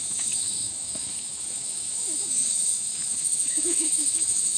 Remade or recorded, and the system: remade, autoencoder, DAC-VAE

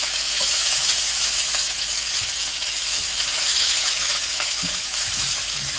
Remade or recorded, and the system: remade, autoencoder, DAC-VAE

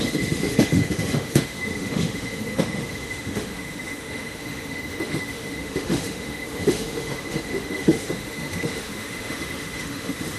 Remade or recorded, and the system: remade, autoencoder, DAC-VAE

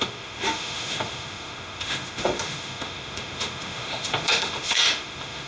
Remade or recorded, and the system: remade, autoencoder, DAC-VAE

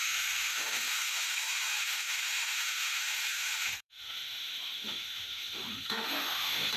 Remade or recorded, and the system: remade, autoencoder, DAC-VAE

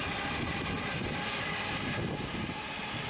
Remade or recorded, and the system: recorded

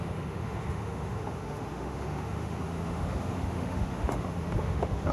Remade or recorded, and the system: remade, autoencoder, DAC-VAE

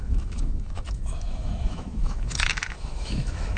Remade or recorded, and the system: remade, autoencoder, DAC-VAE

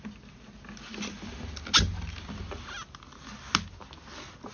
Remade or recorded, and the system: recorded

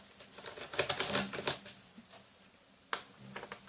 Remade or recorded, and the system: recorded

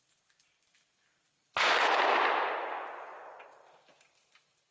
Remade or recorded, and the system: recorded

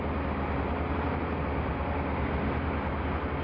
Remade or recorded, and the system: recorded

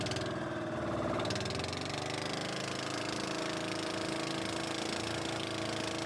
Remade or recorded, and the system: recorded